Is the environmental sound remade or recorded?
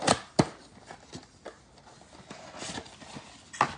recorded